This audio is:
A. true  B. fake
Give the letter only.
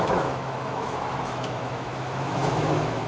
B